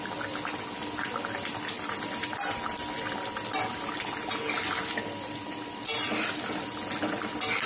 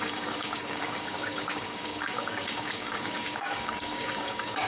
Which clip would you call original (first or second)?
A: first